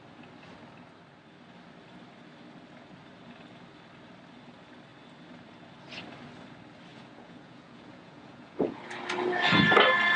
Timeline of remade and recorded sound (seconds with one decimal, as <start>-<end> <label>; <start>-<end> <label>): 0.0-6.9 recorded; 6.9-8.8 remade; 8.8-10.2 recorded